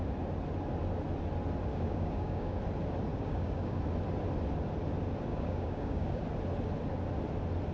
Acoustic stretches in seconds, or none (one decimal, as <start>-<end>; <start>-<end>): 0.0-1.7; 2.6-3.1; 3.8-5.3; 6.2-7.7